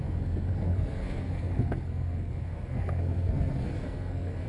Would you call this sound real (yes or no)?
no